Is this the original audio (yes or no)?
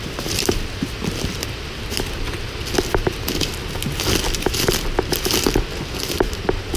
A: yes